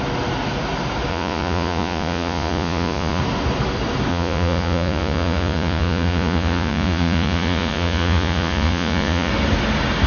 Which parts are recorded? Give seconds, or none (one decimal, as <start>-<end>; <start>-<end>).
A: 0.0-1.1; 3.2-4.1; 9.3-10.1